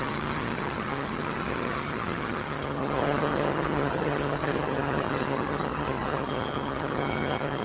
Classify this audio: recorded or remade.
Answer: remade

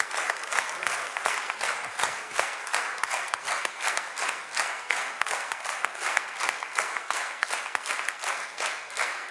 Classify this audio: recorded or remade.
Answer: remade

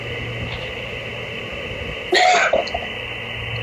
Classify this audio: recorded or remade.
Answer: recorded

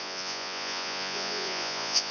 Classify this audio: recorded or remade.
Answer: remade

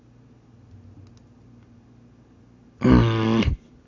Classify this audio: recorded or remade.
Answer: recorded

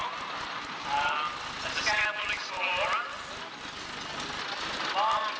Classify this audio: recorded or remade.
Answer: recorded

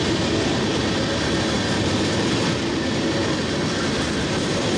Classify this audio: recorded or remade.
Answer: remade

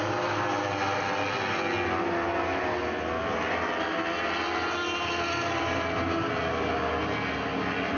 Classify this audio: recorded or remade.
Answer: recorded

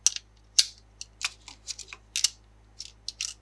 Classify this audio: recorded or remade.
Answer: recorded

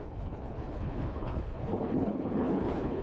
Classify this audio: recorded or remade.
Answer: remade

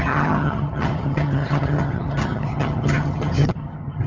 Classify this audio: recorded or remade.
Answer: remade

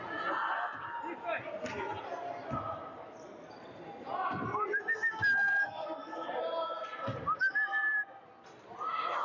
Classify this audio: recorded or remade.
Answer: recorded